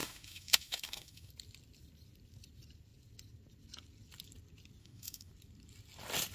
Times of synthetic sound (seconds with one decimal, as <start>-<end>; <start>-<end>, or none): 0.0-1.3; 4.8-5.3